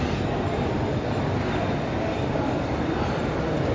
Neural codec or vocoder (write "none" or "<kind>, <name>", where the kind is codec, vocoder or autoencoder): none